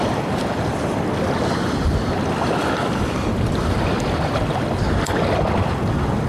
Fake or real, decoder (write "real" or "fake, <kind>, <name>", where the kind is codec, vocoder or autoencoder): fake, vocoder, BigVGAN v2